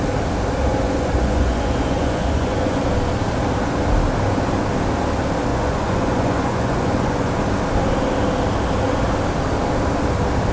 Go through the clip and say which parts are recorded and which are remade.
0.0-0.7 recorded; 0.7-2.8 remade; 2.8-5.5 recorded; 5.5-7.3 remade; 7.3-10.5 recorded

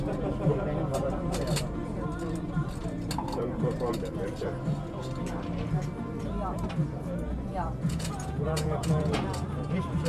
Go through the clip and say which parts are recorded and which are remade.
0.0-7.5 recorded; 7.5-9.1 remade; 9.1-10.1 recorded

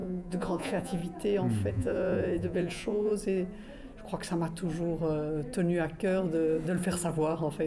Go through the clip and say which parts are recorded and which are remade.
0.0-1.0 remade; 1.0-1.7 recorded; 1.7-3.1 remade; 3.1-7.7 recorded

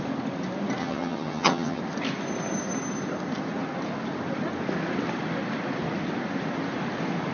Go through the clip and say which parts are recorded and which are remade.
0.0-0.8 recorded; 0.8-1.8 remade; 1.8-7.3 recorded